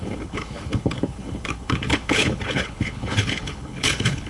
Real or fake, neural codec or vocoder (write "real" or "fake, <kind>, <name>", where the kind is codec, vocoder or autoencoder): fake, codec, HILCodec